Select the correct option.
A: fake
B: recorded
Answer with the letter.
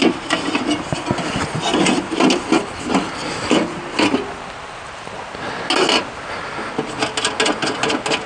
B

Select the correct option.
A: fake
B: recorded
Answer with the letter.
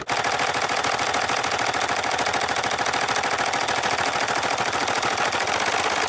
B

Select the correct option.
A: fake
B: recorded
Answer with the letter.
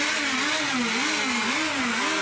B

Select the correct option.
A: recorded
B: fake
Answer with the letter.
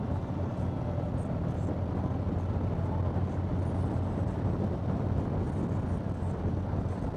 A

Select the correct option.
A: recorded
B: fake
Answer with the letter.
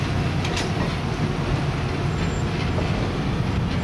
A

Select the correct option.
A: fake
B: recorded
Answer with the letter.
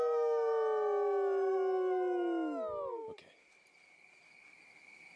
B